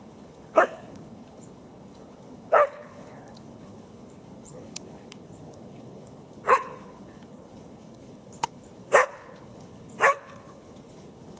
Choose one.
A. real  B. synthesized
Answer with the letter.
B